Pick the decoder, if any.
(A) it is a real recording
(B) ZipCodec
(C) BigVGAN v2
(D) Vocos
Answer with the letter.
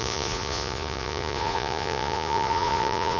D